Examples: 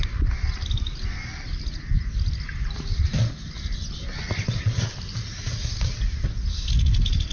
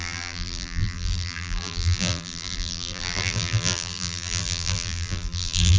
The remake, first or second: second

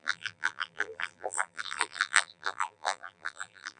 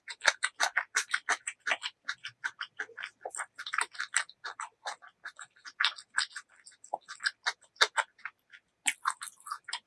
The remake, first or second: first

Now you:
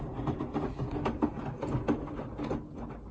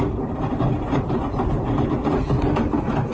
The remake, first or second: second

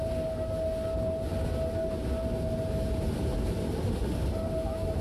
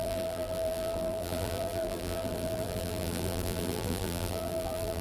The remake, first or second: second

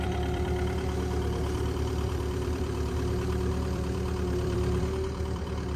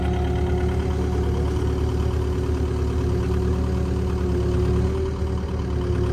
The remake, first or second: first